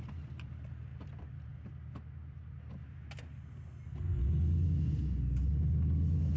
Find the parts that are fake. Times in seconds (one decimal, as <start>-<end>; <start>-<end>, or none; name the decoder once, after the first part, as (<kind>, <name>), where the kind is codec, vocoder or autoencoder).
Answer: 0.9-1.5 (vocoder, BigVGAN v2)